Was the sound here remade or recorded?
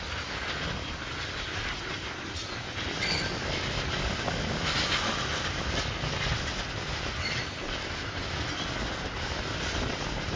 recorded